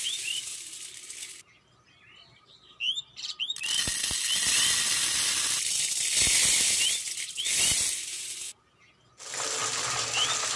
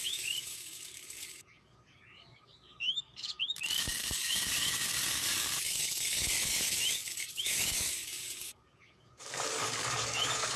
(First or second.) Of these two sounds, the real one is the first